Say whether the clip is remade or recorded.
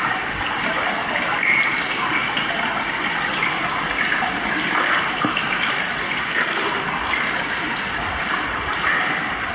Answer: recorded